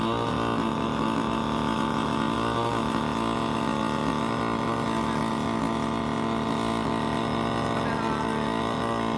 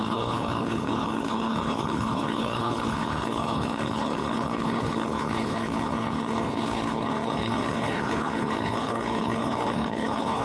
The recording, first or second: first